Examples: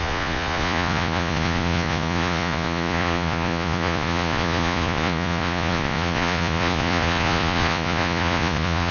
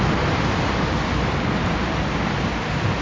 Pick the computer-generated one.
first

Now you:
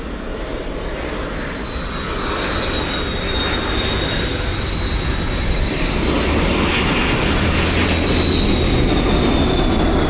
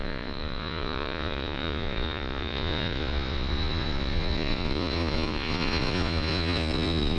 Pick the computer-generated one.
second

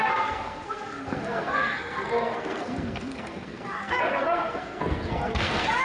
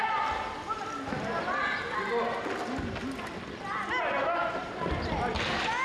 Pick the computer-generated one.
first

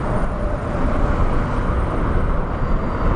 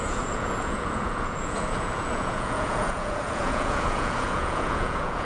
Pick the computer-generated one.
second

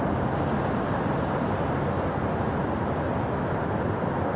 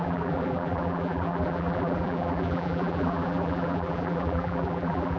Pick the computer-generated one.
second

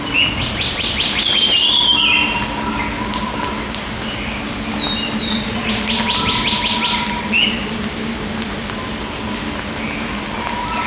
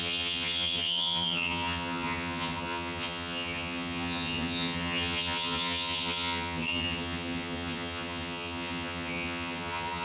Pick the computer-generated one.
second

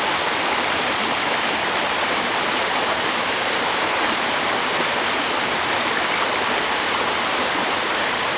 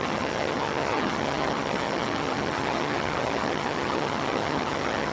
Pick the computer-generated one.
second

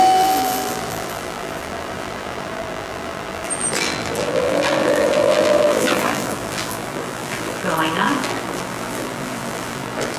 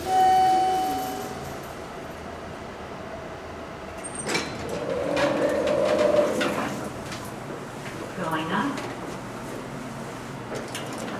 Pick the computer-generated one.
first